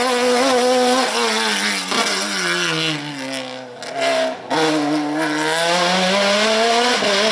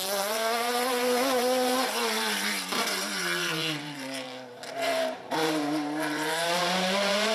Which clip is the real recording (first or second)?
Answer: first